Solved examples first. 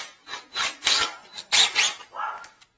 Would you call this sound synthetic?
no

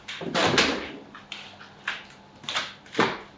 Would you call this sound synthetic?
no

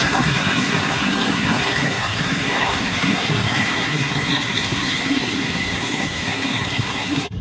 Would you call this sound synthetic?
yes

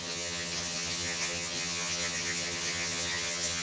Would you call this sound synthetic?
yes